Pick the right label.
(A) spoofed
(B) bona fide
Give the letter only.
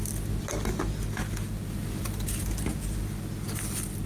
B